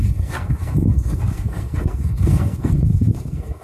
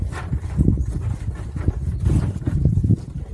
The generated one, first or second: first